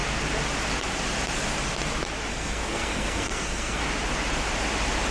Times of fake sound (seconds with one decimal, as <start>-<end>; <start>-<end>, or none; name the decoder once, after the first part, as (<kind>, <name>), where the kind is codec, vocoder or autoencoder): 2.3-3.8 (codec, SNAC)